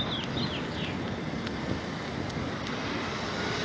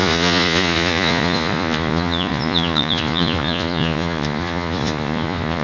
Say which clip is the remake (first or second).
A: second